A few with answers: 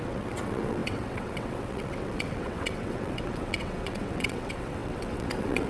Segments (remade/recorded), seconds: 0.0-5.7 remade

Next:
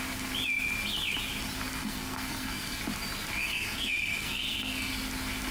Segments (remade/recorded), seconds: 0.0-1.8 recorded; 1.8-2.8 remade; 2.8-3.4 recorded; 3.4-4.9 remade; 4.9-5.5 recorded

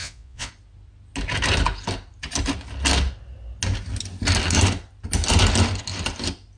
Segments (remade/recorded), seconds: 0.0-0.5 remade; 0.5-6.6 recorded

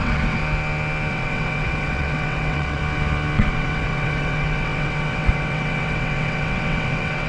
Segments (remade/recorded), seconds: 0.0-0.4 remade; 0.4-1.1 recorded; 1.1-2.8 remade; 2.8-3.5 recorded; 3.5-7.3 remade

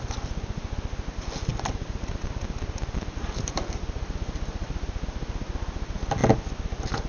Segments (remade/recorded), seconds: 0.0-7.1 recorded